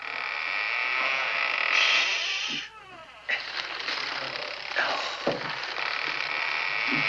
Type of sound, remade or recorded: recorded